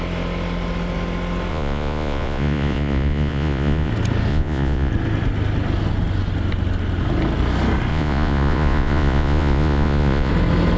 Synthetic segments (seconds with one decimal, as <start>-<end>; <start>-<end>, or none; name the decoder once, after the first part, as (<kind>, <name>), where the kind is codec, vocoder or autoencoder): 1.5-3.9 (vocoder, Vocos); 4.3-4.9; 7.9-10.3